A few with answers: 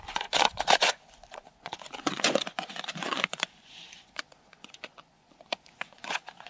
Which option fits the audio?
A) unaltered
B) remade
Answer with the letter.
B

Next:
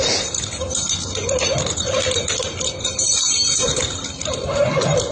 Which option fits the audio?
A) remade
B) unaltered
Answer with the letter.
B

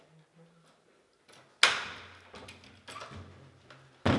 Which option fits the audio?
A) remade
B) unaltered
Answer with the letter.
B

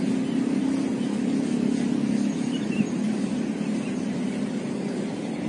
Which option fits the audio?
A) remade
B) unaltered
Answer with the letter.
B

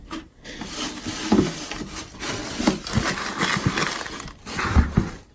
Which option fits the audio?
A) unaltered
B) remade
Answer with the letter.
A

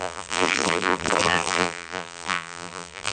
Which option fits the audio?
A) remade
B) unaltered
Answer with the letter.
A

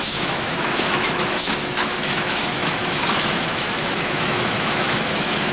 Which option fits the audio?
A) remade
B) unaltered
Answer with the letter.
A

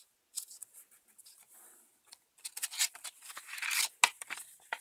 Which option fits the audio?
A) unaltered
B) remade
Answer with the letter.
A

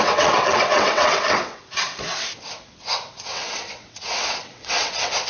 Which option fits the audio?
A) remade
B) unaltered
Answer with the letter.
A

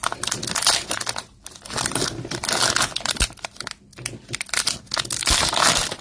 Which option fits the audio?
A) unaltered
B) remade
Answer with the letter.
A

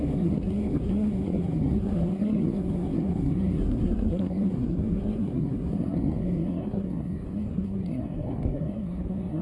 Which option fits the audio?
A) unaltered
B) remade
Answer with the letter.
B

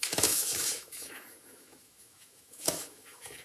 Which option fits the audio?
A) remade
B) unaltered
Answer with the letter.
A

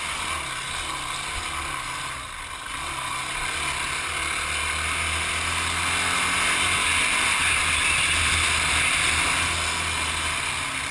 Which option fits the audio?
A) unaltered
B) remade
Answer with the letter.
A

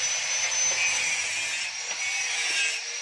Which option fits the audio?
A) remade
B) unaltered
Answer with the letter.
B